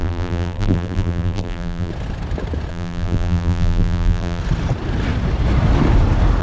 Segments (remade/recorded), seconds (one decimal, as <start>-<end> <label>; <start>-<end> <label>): 0.0-1.9 remade; 1.9-2.7 recorded; 2.7-4.4 remade; 4.4-6.4 recorded